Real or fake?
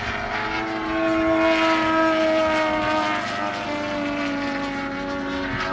real